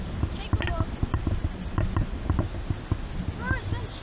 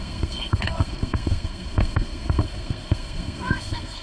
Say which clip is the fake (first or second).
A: second